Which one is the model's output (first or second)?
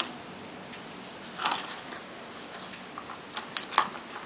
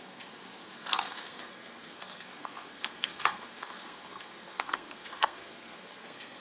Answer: second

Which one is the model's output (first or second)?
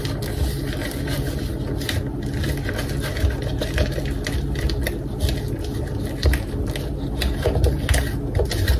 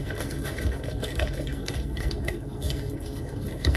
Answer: second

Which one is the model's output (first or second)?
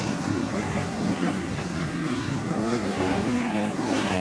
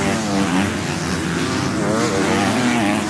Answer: first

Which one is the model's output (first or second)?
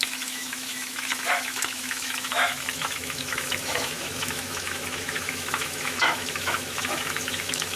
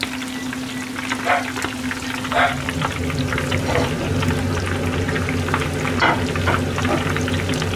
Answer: first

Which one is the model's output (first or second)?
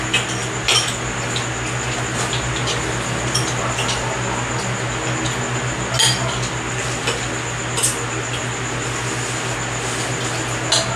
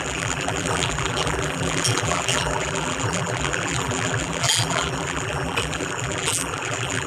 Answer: second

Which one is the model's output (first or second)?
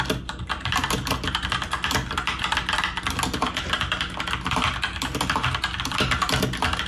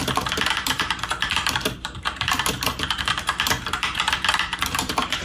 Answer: second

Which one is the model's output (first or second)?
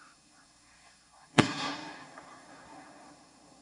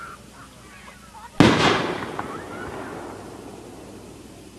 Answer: first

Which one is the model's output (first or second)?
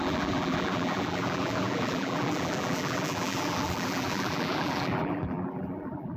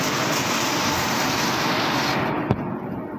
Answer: first